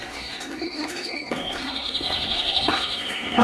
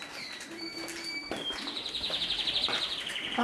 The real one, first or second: second